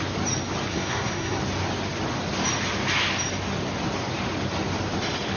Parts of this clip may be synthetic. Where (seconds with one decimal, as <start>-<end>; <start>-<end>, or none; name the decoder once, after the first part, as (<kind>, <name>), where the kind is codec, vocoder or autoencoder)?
0.7-1.4 (codec, SNAC)